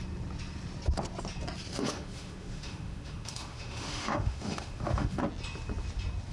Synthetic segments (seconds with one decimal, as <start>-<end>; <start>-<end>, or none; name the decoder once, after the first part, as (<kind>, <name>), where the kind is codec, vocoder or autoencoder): 1.7-5.2 (autoencoder, DAC-VAE)